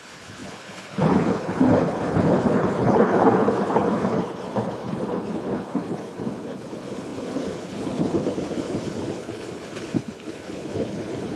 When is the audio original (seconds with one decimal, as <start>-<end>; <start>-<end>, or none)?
none